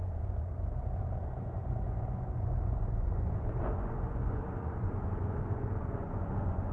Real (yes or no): no